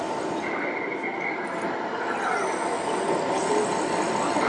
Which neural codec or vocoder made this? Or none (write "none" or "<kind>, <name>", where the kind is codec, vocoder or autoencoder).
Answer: none